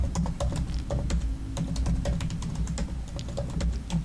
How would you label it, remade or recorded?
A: recorded